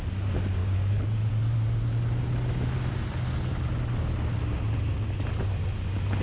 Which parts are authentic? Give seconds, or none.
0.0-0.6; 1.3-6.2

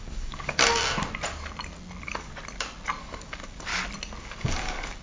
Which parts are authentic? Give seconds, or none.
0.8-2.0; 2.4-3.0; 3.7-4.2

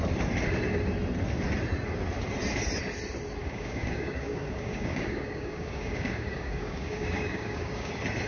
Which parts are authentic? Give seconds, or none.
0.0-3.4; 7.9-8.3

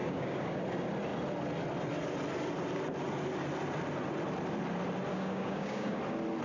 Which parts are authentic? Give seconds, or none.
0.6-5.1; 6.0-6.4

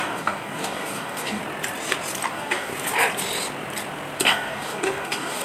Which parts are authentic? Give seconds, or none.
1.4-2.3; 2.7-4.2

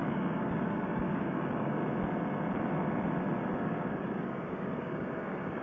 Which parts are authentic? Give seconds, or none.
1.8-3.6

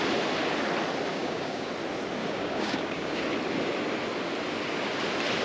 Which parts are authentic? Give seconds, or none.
0.0-1.1; 1.7-2.2; 3.2-5.4